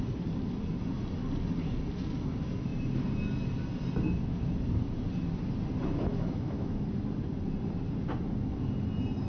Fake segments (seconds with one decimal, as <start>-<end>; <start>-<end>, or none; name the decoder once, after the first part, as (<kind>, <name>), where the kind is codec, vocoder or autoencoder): 6.1-6.8 (autoencoder, DAC-VAE)